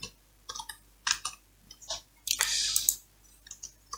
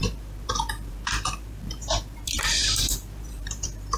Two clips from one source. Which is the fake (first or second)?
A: second